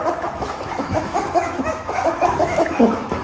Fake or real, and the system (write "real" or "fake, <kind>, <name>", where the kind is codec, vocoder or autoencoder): fake, autoencoder, DAC-VAE